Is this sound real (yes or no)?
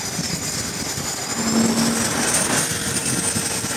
yes